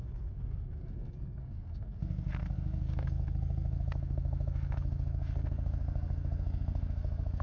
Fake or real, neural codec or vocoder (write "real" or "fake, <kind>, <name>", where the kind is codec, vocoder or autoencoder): fake, codec, SNAC